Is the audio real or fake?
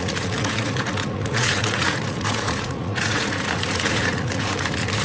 fake